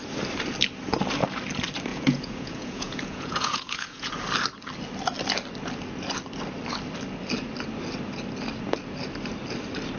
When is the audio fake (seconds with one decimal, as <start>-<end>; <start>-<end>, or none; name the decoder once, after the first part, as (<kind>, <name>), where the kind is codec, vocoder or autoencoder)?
1.9-4.1 (vocoder, Vocos)